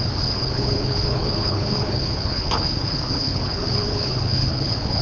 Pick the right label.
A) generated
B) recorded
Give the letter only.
A